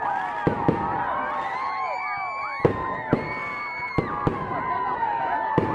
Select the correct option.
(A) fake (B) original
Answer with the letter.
B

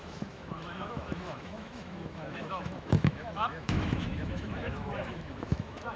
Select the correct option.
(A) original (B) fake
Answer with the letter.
B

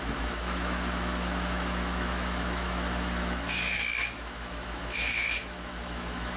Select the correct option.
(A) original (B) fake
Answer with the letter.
B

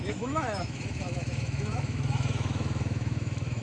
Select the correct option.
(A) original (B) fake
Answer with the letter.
B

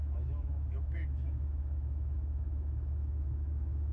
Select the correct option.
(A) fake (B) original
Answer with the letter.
A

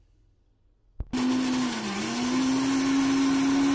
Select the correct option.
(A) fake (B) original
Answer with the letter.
B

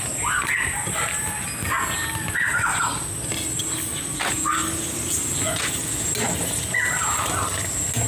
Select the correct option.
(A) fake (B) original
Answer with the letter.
B